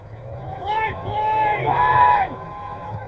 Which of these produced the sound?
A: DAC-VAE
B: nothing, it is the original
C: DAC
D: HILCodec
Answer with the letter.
A